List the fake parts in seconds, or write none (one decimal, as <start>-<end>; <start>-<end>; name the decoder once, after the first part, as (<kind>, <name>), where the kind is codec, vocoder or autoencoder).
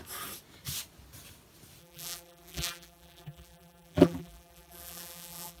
1.8-5.6 (vocoder, BigVGAN v2)